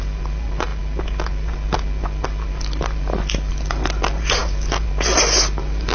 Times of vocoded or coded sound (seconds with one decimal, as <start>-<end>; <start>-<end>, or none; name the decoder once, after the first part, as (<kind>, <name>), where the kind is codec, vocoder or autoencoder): none